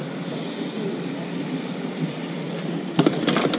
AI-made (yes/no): yes